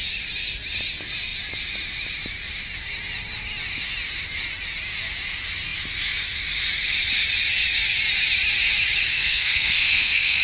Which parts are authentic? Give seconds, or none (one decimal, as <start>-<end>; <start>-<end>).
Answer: 0.0-9.1